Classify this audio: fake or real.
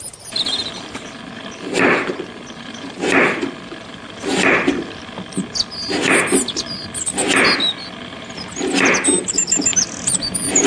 real